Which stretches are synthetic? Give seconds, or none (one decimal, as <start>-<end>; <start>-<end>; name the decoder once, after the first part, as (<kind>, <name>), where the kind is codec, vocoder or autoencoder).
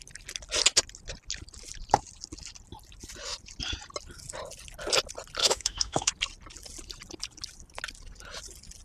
5.4-6.1 (autoencoder, DAC-VAE)